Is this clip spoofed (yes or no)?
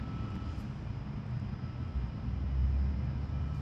no